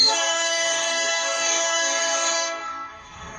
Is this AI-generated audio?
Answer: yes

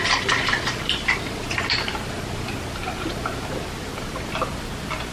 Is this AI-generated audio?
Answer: yes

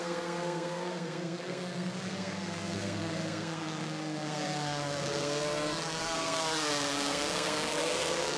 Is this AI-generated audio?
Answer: yes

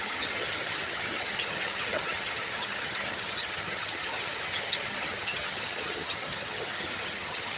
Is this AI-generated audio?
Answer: yes